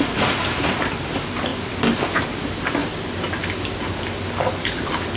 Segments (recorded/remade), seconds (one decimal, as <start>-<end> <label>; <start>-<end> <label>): 0.0-1.5 remade; 1.5-2.2 recorded; 2.2-2.8 remade; 2.8-4.5 recorded; 4.5-5.2 remade